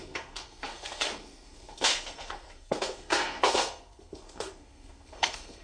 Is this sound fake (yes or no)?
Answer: yes